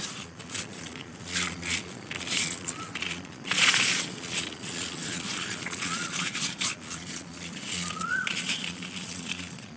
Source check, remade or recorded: remade